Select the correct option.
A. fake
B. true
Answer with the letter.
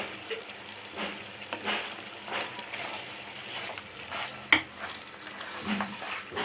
B